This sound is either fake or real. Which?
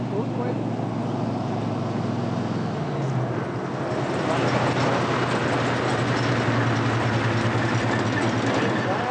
real